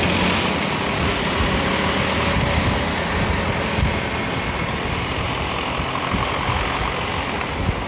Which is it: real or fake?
real